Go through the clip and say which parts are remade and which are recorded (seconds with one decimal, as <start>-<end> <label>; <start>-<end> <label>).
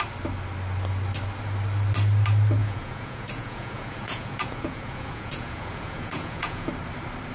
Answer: 0.0-2.6 recorded; 2.6-6.7 remade; 6.7-7.3 recorded